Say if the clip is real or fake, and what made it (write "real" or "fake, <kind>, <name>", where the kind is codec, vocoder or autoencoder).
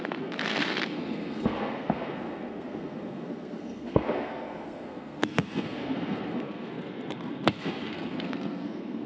fake, codec, SNAC